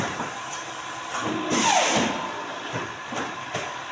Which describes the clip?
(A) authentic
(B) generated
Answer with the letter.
B